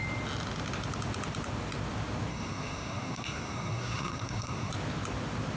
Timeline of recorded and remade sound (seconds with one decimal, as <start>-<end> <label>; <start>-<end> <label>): 0.0-2.3 recorded; 2.3-4.7 remade; 4.7-5.6 recorded